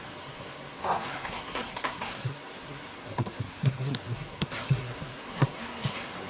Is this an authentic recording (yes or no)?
no